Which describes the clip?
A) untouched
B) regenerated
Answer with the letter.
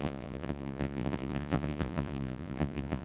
B